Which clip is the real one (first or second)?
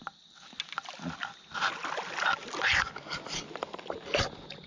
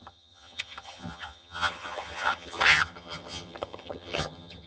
first